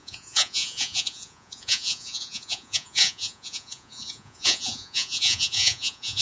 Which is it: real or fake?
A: fake